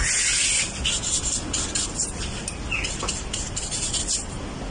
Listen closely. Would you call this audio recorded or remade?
recorded